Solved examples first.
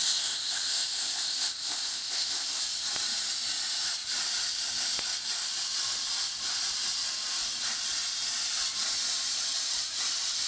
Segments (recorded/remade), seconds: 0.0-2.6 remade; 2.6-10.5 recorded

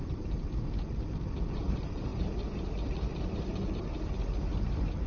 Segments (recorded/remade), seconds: 0.0-5.1 recorded